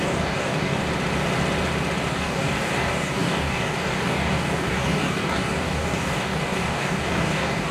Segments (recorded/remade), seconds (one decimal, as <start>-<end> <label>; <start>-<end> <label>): 0.0-0.8 remade; 0.8-2.1 recorded; 2.1-7.7 remade